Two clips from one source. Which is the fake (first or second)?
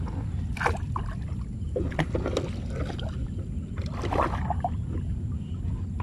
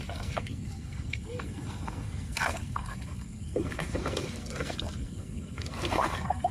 second